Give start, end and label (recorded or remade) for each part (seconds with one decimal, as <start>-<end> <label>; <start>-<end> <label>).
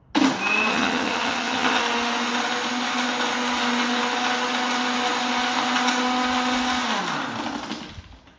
0.0-0.7 recorded; 0.7-1.8 remade; 1.8-8.4 recorded